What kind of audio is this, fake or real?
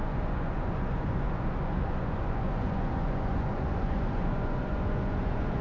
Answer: fake